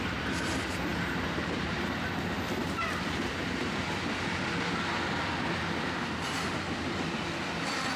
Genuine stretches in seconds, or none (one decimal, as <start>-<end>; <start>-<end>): 0.0-8.0